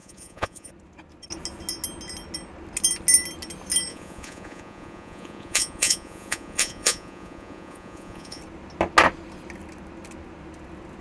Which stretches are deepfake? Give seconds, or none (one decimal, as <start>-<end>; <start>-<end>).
0.0-0.7; 3.9-8.4